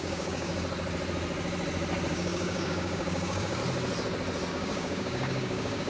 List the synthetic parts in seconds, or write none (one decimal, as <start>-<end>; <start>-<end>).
0.0-0.5; 2.1-3.6; 4.5-5.9